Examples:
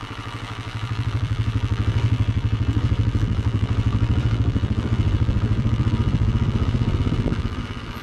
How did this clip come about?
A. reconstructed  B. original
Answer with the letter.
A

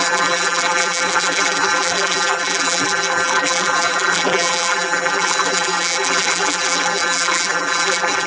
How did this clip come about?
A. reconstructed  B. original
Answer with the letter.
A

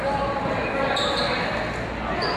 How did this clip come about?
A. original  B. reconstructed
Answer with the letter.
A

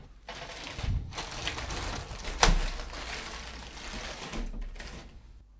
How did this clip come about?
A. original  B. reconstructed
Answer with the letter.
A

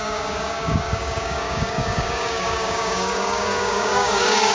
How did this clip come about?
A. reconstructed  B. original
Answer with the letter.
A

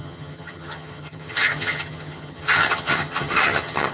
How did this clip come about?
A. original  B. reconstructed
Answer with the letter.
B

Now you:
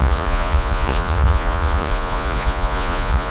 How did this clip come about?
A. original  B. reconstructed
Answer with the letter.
B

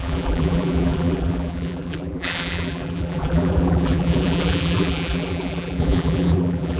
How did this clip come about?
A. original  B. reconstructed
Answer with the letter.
B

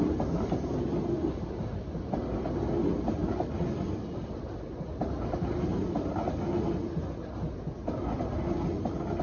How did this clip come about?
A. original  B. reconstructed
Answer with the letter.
A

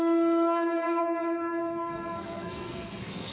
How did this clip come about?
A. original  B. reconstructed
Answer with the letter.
B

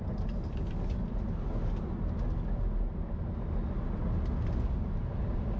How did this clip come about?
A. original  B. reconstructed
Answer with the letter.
A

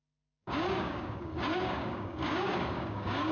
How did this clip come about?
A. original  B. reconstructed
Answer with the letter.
B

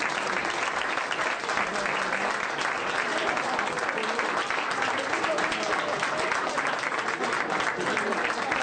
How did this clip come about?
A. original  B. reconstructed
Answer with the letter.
A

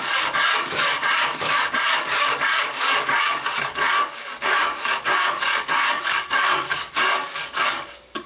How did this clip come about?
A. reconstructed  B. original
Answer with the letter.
A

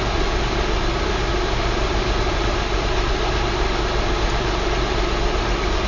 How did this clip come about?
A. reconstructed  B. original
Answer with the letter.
B